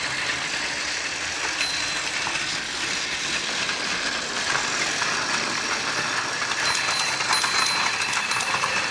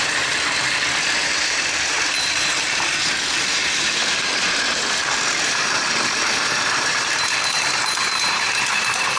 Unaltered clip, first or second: first